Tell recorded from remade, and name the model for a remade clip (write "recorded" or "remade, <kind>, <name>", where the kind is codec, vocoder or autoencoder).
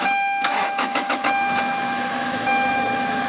remade, autoencoder, DAC-VAE